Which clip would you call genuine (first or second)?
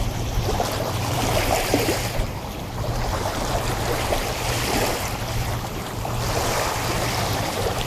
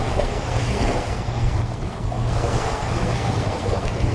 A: first